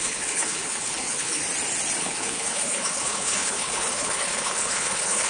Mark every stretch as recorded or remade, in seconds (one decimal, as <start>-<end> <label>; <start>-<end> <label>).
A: 0.0-1.4 remade; 1.4-2.0 recorded; 2.0-5.3 remade